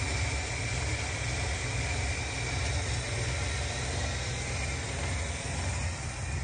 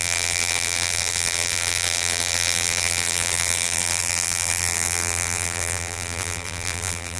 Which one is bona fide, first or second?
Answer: first